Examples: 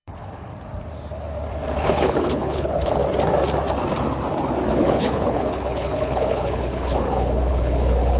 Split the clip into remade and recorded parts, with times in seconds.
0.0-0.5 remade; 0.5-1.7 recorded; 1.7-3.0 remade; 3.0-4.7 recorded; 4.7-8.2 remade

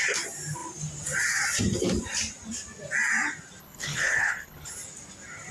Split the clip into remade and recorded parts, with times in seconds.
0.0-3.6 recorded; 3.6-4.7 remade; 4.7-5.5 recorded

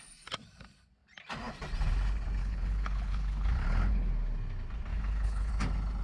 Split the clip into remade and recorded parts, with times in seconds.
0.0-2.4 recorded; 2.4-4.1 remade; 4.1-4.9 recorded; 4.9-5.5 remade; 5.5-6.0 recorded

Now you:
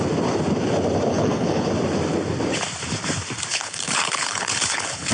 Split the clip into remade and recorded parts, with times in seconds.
0.0-1.1 recorded; 1.1-1.7 remade; 1.7-3.5 recorded; 3.5-5.1 remade

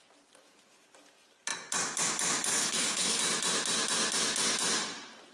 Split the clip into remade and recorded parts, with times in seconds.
0.0-2.5 recorded; 2.5-3.2 remade; 3.2-5.3 recorded

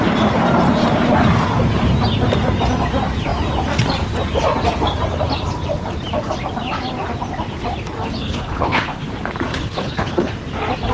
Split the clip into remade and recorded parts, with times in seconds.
0.0-8.2 recorded; 8.2-9.1 remade; 9.1-9.5 recorded; 9.5-10.3 remade; 10.3-10.9 recorded